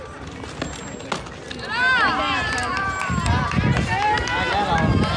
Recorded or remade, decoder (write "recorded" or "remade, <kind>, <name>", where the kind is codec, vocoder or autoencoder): recorded